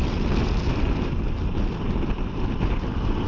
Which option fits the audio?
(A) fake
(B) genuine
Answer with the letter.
B